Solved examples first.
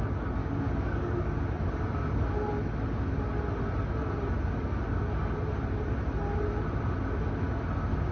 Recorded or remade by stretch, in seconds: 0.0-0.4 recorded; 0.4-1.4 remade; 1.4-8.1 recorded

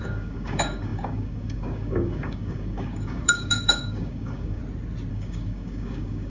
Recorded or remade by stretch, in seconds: 0.0-4.6 remade; 4.6-5.1 recorded; 5.1-6.3 remade

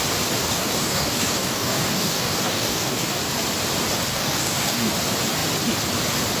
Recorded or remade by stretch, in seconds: 0.0-0.4 recorded; 0.4-3.2 remade; 3.2-4.1 recorded; 4.1-4.9 remade; 4.9-6.4 recorded

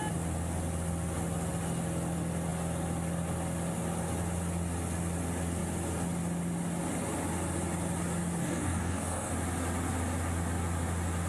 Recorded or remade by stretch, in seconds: 0.0-8.4 recorded; 8.4-9.3 remade; 9.3-11.3 recorded

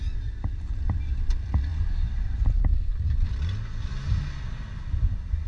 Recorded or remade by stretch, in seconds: 0.0-5.5 recorded